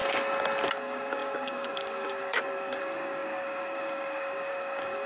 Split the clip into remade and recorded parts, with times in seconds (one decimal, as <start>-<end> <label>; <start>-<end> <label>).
0.0-0.7 recorded; 0.7-5.1 remade